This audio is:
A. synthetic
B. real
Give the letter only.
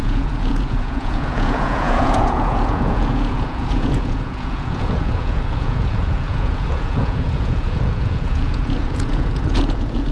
A